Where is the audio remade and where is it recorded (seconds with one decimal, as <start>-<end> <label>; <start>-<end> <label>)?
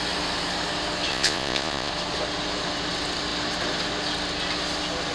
0.0-1.1 recorded; 1.1-1.9 remade; 1.9-5.1 recorded